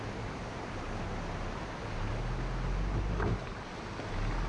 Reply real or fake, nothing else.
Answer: real